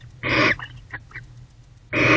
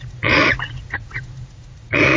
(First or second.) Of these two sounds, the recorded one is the first